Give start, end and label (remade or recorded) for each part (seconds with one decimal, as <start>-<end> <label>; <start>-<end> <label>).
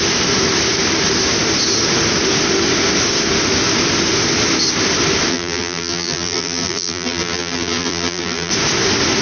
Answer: 0.0-5.3 recorded; 5.3-8.5 remade; 8.5-9.2 recorded